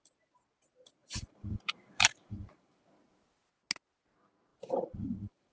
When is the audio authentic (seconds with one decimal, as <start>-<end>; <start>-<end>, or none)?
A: 0.0-1.0; 2.8-4.5